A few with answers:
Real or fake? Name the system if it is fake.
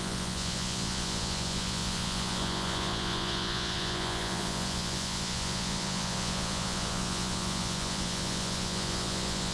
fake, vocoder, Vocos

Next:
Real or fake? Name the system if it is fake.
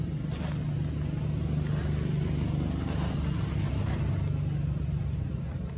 real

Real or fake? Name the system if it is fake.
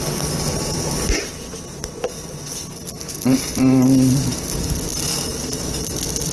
real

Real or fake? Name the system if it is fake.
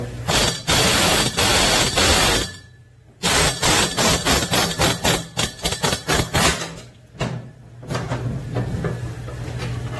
real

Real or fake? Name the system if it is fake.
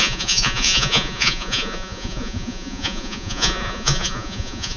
fake, vocoder, Vocos